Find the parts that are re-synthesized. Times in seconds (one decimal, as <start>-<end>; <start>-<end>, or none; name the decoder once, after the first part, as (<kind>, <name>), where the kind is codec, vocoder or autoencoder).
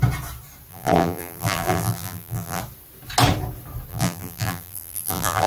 0.7-2.6 (vocoder, BigVGAN v2); 3.9-5.5